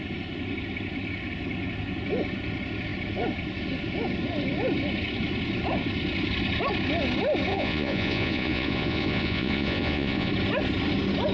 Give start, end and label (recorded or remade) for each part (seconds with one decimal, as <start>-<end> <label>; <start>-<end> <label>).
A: 0.0-7.5 recorded; 7.5-10.3 remade; 10.3-11.3 recorded

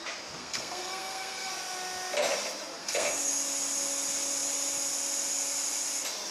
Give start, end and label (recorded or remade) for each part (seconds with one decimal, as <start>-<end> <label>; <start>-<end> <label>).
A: 0.0-0.4 recorded; 0.4-1.5 remade; 1.5-2.8 recorded; 2.8-3.3 remade; 3.3-6.3 recorded

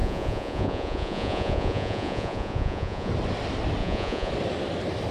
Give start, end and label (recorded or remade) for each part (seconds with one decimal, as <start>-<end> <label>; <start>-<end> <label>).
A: 0.0-3.1 remade; 3.1-3.8 recorded; 3.8-4.3 remade; 4.3-5.1 recorded

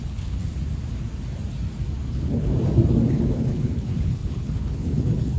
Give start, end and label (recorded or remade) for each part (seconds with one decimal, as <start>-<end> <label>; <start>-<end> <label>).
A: 0.0-0.4 remade; 0.4-2.1 recorded; 2.1-2.5 remade; 2.5-3.1 recorded; 3.1-5.4 remade